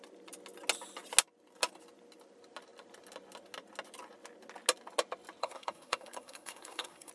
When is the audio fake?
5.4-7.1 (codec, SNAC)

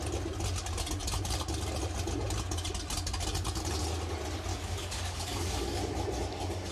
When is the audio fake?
4.5-5.8 (codec, DAC)

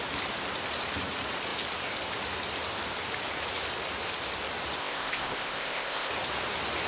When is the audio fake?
4.8-6.1 (codec, ZipCodec)

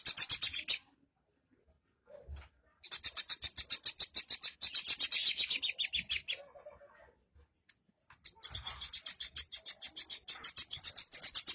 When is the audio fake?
10.7-11.5 (codec, HILCodec)

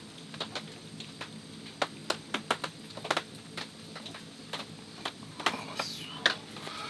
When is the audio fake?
none